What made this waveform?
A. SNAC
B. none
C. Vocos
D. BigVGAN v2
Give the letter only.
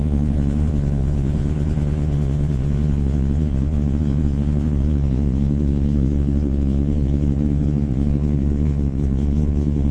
C